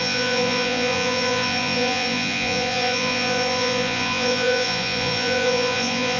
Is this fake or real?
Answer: fake